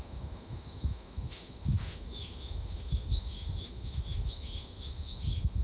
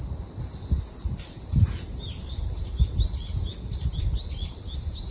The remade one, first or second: first